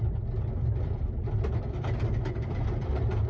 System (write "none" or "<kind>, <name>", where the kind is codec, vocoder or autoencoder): vocoder, BigVGAN v2